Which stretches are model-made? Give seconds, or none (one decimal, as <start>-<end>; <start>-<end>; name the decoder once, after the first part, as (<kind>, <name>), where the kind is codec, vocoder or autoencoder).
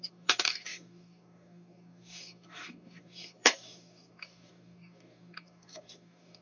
0.0-6.4 (codec, DAC)